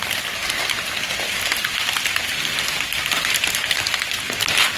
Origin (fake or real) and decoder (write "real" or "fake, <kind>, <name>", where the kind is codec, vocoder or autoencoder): real